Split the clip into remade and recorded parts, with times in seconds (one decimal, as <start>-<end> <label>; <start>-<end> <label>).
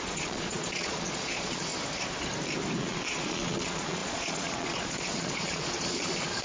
0.0-1.7 remade; 1.7-2.8 recorded; 2.8-6.4 remade